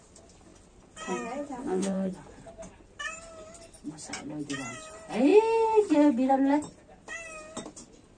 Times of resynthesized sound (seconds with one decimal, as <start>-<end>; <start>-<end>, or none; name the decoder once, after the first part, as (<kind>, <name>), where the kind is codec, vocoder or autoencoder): 1.6-2.1 (vocoder, WaveNeXt)